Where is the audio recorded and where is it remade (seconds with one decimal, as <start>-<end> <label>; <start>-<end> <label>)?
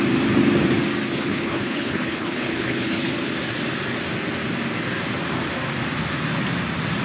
0.0-1.1 recorded; 1.1-3.1 remade; 3.1-7.0 recorded